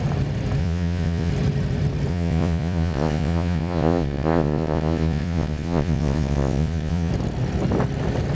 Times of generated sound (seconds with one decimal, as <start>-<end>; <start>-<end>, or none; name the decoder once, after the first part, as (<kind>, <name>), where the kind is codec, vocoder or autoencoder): 0.6-1.3 (vocoder, Vocos); 2.1-7.1